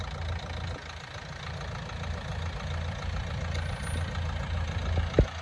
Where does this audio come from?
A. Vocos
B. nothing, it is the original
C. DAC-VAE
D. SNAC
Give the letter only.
B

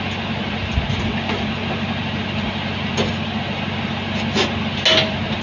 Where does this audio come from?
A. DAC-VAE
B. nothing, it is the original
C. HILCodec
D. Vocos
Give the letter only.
B